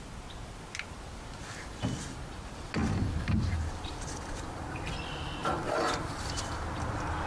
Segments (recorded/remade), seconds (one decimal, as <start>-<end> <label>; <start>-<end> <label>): 0.0-2.8 recorded; 2.8-4.9 remade; 4.9-5.4 recorded; 5.4-6.3 remade; 6.3-7.3 recorded